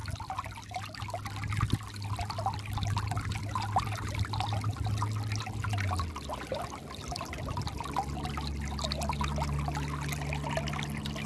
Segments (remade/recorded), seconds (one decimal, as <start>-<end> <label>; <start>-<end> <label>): 0.0-11.3 recorded